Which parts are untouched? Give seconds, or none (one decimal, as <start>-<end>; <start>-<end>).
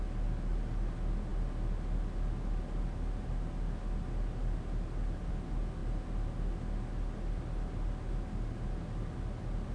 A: 0.0-9.7